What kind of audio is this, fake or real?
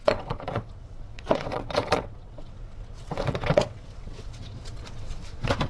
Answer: fake